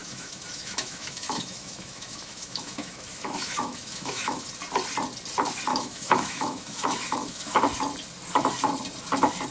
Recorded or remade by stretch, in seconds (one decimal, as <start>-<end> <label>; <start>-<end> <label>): 0.0-4.5 remade; 4.5-5.7 recorded; 5.7-7.6 remade; 7.6-9.5 recorded